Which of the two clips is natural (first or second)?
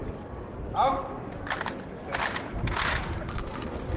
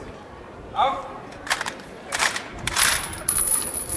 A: first